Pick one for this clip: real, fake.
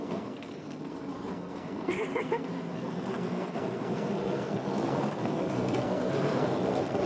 fake